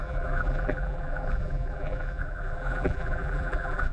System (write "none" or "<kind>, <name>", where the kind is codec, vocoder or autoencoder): vocoder, BigVGAN v2